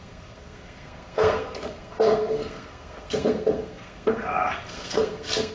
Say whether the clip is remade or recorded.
remade